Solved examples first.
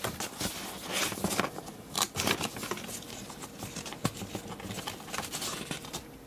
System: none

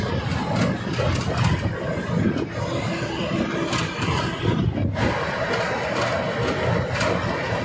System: none